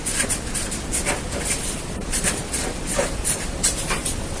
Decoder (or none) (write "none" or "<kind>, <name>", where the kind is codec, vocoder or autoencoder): none